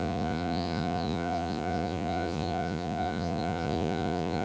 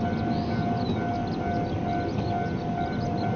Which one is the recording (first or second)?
second